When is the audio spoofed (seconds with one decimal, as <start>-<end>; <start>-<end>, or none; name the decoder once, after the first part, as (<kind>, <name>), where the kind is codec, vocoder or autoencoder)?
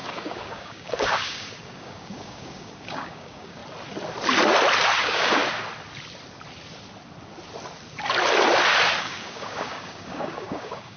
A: 0.0-3.6 (codec, DAC); 5.0-5.4; 9.0-11.0